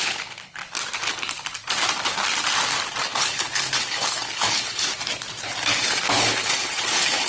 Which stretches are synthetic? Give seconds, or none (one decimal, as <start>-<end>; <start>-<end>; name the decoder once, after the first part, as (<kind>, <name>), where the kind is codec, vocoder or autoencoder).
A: 0.0-0.6 (codec, HILCodec); 3.0-4.9; 5.8-7.3